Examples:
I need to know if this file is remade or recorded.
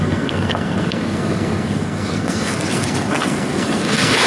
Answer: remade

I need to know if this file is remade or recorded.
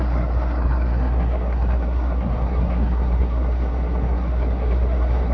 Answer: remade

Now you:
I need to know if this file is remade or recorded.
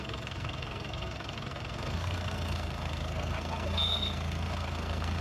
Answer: remade